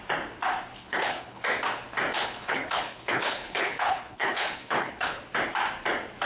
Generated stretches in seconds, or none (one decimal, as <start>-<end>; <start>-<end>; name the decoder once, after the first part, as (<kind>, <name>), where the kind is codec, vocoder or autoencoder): 0.8-1.4 (codec, HILCodec); 2.2-5.2